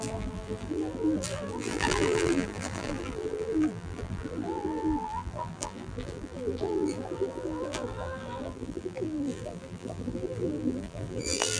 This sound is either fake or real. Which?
fake